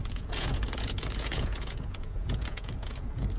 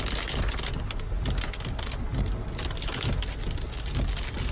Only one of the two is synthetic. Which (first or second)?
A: first